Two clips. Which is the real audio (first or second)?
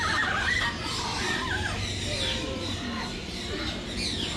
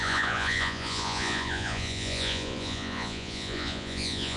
first